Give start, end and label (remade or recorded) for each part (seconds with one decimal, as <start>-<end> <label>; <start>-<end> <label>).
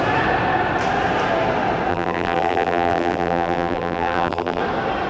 0.0-1.9 recorded; 1.9-4.6 remade; 4.6-5.1 recorded